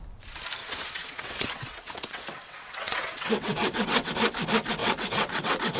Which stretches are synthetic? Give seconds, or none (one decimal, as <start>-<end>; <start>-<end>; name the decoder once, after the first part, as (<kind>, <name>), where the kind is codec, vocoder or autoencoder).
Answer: 0.6-4.1 (vocoder, WaveNeXt); 4.8-5.8